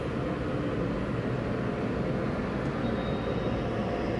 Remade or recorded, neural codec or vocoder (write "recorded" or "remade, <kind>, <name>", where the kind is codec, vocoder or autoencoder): recorded